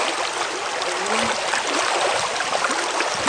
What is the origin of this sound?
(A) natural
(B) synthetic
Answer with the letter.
B